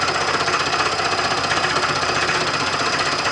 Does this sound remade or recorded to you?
recorded